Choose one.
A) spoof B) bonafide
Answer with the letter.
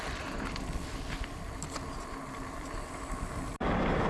B